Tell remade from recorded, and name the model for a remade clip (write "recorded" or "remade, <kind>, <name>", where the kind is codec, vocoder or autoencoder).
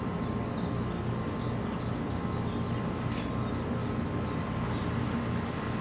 recorded